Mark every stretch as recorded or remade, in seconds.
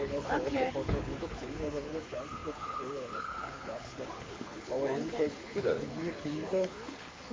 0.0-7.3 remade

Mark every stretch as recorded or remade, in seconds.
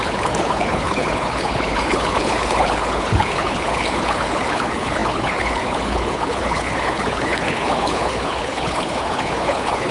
0.0-9.9 remade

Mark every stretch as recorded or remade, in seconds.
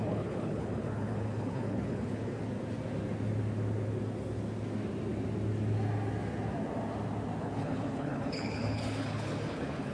0.0-2.4 remade; 2.4-7.4 recorded; 7.4-9.9 remade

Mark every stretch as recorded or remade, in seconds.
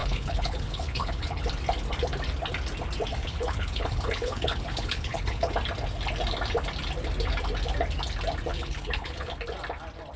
0.0-1.4 remade; 1.4-3.2 recorded; 3.2-5.5 remade; 5.5-8.5 recorded; 8.5-9.3 remade; 9.3-10.2 recorded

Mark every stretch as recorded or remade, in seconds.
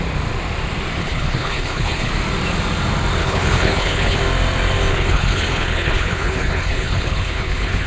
0.0-1.0 recorded; 1.0-2.1 remade; 2.1-3.2 recorded; 3.2-4.2 remade; 4.2-4.9 recorded; 4.9-7.9 remade